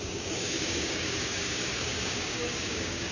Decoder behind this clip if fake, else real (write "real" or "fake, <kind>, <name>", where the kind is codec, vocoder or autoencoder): fake, codec, DAC